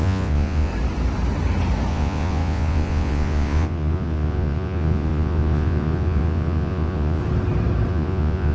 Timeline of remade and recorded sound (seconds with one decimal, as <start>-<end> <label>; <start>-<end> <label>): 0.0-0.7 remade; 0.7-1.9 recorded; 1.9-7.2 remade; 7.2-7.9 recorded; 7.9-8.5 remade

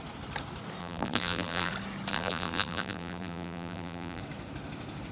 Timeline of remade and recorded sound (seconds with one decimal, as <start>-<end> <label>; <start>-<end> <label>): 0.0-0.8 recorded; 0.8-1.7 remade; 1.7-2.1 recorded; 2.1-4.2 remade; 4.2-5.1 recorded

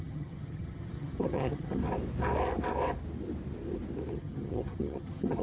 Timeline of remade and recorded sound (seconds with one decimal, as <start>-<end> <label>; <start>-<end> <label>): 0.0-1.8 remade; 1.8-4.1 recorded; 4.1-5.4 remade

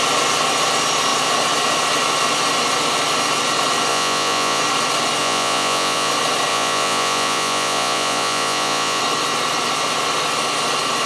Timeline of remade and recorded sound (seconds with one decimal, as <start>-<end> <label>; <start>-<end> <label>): 0.0-3.9 recorded; 3.9-4.6 remade; 4.6-5.2 recorded; 5.2-6.1 remade; 6.1-6.5 recorded; 6.5-9.0 remade; 9.0-11.1 recorded